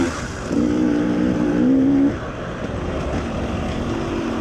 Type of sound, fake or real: fake